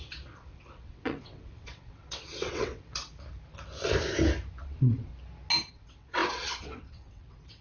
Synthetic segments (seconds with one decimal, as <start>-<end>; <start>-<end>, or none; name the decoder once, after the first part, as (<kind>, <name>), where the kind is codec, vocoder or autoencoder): 0.0-3.1 (vocoder, WaveNeXt); 4.6-5.1; 5.7-7.6